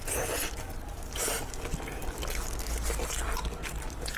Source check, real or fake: real